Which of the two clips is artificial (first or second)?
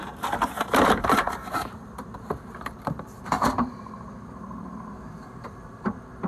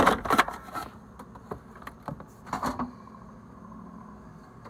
first